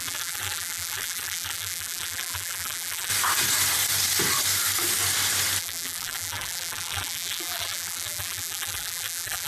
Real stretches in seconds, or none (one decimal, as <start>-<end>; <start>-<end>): 3.1-5.6